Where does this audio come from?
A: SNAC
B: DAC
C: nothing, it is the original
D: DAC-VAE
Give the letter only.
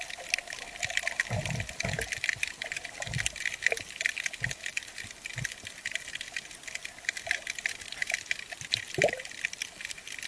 C